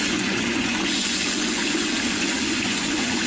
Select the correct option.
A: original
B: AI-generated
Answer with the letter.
B